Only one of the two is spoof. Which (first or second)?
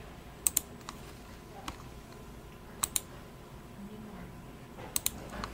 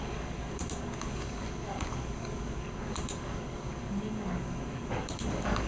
second